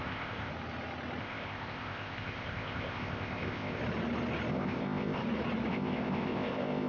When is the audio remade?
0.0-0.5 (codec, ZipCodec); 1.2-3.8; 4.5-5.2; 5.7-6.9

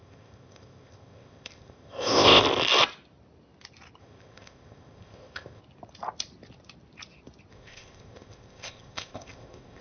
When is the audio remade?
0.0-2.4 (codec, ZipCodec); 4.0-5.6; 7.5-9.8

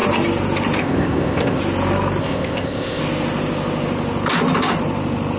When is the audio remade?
0.8-1.6 (codec, ZipCodec); 2.2-3.0

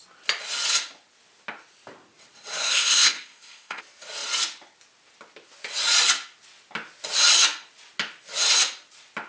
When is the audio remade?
2.6-3.8 (codec, ZipCodec)